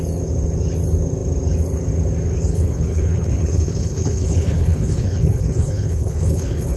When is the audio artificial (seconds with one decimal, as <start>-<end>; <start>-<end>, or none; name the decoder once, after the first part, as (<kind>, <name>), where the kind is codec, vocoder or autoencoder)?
2.5-6.8 (codec, HILCodec)